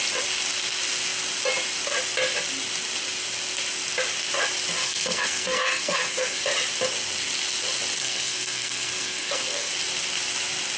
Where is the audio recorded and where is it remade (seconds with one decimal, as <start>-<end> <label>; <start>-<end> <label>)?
0.0-4.8 recorded; 4.8-6.4 remade; 6.4-8.0 recorded; 8.0-9.7 remade; 9.7-10.8 recorded